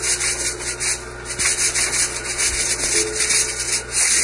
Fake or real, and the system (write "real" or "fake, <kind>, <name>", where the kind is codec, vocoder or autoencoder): real